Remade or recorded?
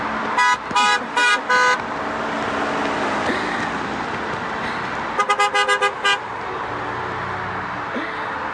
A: recorded